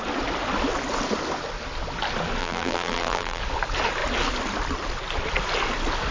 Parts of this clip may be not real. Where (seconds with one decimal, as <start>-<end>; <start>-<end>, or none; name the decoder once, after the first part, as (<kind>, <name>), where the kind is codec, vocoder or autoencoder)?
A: 2.4-3.4 (vocoder, BigVGAN v2)